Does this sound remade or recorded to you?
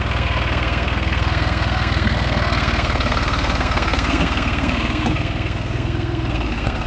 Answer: remade